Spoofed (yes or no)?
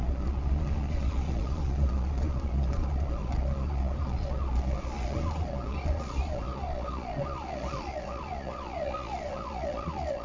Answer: yes